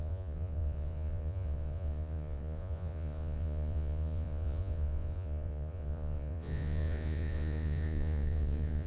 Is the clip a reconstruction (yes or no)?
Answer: yes